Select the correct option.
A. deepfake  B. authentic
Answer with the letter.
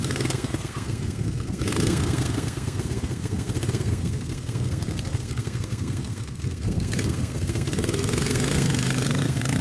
A